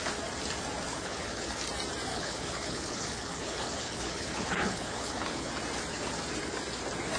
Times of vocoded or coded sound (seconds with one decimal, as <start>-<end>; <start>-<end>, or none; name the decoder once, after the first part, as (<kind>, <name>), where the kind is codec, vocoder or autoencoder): 0.9-1.6 (codec, HILCodec); 2.1-5.5